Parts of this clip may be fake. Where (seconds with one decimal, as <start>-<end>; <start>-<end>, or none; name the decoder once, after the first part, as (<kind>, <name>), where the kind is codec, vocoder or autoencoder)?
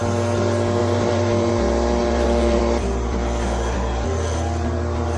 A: 0.8-1.5 (vocoder, BigVGAN v2); 2.0-2.6